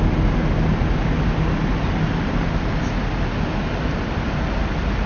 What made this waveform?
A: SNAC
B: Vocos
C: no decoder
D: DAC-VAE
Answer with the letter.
C